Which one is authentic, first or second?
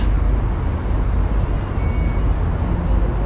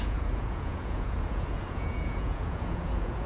first